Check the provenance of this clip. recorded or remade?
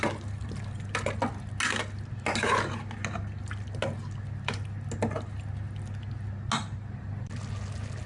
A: recorded